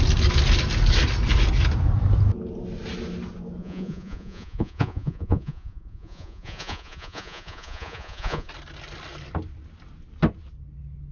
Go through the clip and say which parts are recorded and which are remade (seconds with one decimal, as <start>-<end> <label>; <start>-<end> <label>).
0.0-3.6 recorded; 3.6-8.5 remade; 8.5-11.1 recorded